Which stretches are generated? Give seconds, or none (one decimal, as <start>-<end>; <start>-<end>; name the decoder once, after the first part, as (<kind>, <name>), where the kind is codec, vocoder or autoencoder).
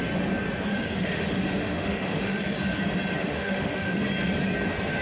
0.7-2.4 (autoencoder, DAC-VAE); 3.2-4.0